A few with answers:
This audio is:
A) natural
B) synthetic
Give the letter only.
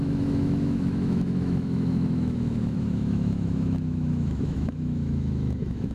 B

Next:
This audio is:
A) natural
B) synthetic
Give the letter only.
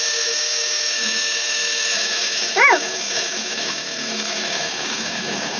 B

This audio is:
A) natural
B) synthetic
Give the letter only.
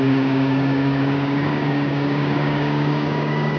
B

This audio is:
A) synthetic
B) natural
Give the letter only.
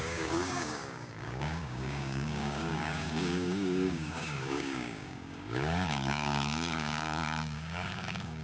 A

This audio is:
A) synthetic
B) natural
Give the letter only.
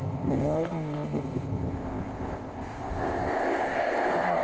A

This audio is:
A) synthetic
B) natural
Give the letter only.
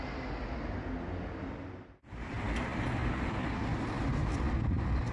B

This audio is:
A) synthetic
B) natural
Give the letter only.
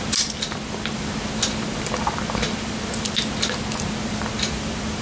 B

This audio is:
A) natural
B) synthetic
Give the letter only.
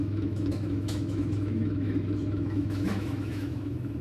B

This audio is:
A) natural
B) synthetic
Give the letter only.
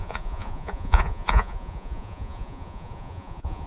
B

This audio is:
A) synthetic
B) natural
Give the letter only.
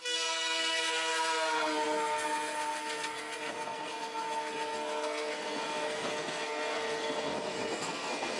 A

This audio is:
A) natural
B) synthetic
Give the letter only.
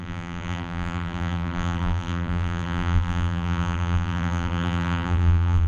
B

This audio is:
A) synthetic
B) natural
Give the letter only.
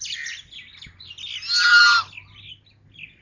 B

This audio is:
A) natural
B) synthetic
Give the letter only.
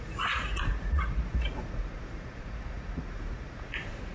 B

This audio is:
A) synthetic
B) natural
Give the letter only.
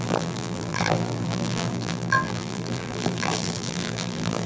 A